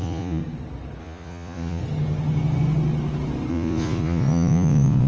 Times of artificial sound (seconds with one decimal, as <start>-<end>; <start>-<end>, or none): 0.0-0.4; 1.0-1.8; 3.5-5.1